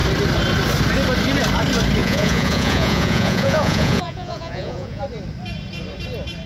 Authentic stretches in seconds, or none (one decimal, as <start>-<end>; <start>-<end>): 0.0-2.0; 5.0-6.5